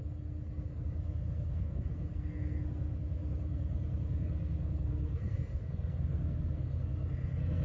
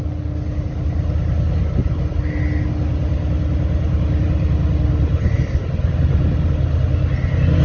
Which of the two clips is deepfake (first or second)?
first